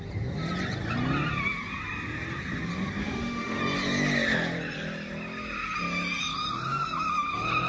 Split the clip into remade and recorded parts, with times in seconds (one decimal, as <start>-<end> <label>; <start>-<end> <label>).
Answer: 0.0-3.0 recorded; 3.0-3.6 remade; 3.6-7.7 recorded